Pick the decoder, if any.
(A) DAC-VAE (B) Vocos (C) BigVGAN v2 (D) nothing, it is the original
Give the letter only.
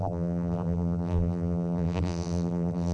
C